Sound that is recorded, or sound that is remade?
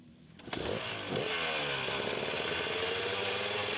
recorded